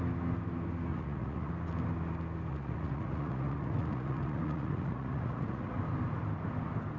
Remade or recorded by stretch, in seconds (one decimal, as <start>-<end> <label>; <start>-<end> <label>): 0.0-0.9 recorded; 0.9-1.5 remade; 1.5-2.5 recorded; 2.5-5.8 remade; 5.8-7.0 recorded